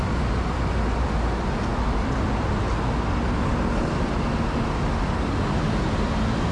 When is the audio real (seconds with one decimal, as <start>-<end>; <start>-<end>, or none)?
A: 0.0-6.5